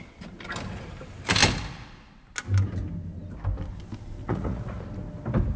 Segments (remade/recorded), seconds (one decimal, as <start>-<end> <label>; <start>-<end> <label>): 0.0-4.2 recorded; 4.2-4.8 remade; 4.8-5.6 recorded